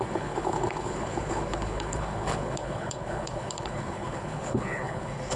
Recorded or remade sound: remade